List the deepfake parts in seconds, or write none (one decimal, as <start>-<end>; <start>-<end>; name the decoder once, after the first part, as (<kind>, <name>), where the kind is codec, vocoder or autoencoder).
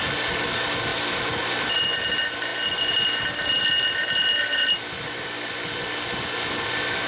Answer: none